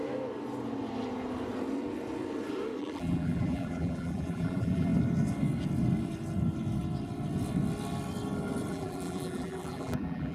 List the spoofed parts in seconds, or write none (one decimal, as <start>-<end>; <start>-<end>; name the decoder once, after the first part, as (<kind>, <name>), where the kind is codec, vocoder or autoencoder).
2.8-4.9 (vocoder, BigVGAN v2); 8.7-10.3